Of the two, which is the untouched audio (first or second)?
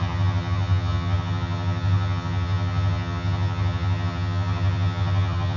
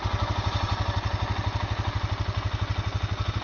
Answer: second